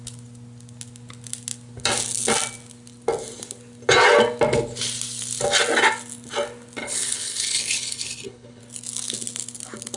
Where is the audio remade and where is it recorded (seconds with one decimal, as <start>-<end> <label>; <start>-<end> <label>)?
0.0-6.8 recorded; 6.8-8.6 remade; 8.6-10.0 recorded